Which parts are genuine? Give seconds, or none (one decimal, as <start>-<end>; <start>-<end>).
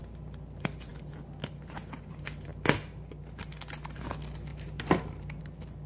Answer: 0.0-4.5; 5.4-5.9